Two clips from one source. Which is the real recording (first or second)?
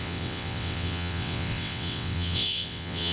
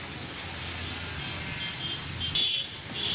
second